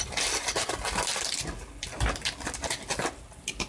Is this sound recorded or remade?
recorded